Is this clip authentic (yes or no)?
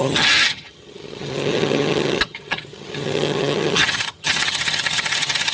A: no